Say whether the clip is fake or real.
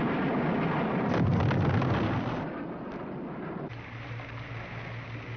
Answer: real